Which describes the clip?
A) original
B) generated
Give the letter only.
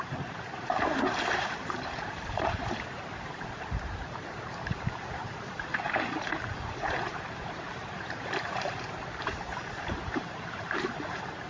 B